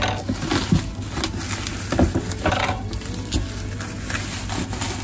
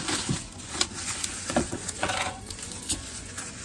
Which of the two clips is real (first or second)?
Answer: first